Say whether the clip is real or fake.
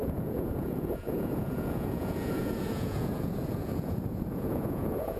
fake